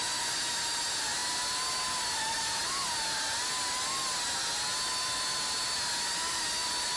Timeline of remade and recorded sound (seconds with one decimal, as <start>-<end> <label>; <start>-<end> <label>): 0.0-7.0 recorded